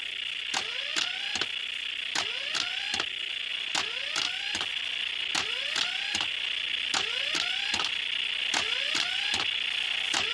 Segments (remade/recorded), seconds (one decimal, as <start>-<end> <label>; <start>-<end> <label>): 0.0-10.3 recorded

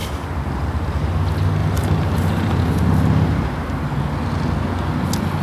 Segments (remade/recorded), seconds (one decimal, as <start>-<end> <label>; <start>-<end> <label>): 0.0-1.0 remade; 1.0-1.6 recorded; 1.6-2.6 remade; 2.6-5.4 recorded

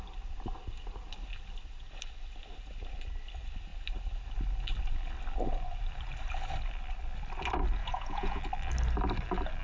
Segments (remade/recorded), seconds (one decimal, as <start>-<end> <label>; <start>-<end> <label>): 0.0-7.8 recorded; 7.8-8.4 remade; 8.4-9.6 recorded

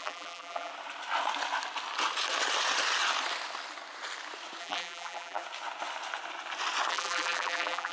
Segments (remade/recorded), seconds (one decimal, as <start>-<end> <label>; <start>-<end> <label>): 0.0-0.7 remade; 0.7-4.6 recorded; 4.6-5.4 remade; 5.4-6.9 recorded; 6.9-7.9 remade

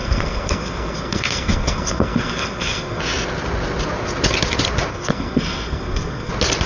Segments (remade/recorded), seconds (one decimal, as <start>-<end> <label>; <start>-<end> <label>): 0.0-3.0 remade; 3.0-4.9 recorded; 4.9-6.3 remade; 6.3-6.7 recorded